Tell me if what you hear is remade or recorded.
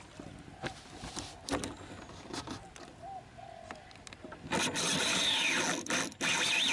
recorded